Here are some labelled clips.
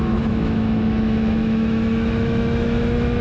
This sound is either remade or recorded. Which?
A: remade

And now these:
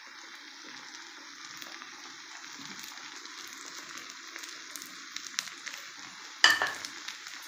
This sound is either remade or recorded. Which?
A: recorded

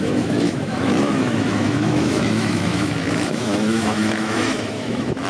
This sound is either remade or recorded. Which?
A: remade